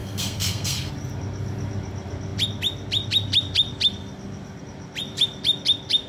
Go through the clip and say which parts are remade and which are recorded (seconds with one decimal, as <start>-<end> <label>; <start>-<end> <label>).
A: 0.0-0.9 remade; 0.9-6.1 recorded